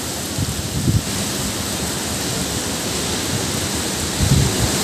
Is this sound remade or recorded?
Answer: recorded